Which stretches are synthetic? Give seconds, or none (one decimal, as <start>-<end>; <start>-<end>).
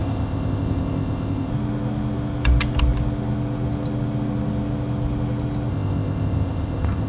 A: 0.0-1.5; 5.7-7.1